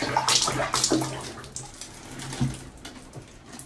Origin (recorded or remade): recorded